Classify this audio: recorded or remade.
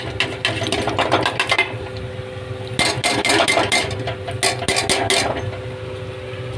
recorded